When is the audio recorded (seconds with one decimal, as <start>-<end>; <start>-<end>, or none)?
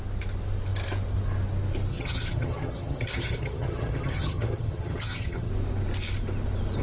0.0-1.9; 5.5-6.8